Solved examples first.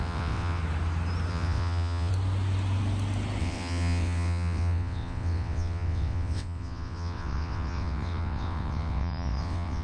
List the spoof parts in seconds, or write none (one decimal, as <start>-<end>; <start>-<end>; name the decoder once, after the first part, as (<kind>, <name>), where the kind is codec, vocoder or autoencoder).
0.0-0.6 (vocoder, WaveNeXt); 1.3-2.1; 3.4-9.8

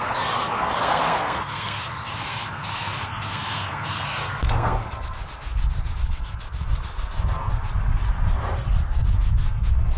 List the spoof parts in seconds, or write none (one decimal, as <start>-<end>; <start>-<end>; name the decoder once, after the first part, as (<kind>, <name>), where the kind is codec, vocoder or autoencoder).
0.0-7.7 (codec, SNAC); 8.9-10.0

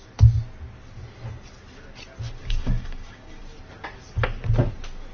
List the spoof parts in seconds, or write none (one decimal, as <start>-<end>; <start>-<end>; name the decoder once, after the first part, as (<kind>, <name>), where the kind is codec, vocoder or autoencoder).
2.4-3.4 (codec, DAC)